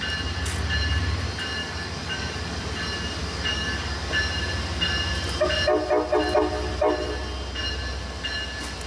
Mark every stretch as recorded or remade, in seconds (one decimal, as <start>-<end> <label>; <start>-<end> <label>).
0.0-1.6 recorded; 1.6-2.6 remade; 2.6-3.2 recorded; 3.2-4.1 remade; 4.1-8.9 recorded

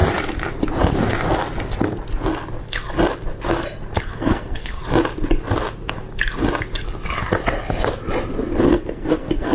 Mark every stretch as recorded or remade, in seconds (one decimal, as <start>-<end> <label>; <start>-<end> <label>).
0.0-4.0 recorded; 4.0-4.8 remade; 4.8-8.7 recorded; 8.7-9.5 remade

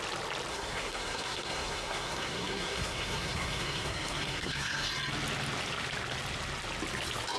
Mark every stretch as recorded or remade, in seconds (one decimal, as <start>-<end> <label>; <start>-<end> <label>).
0.0-0.5 recorded; 0.5-4.9 remade; 4.9-7.4 recorded

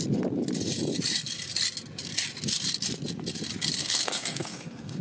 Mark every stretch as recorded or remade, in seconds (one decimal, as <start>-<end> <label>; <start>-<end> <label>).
0.0-3.8 recorded; 3.8-5.0 remade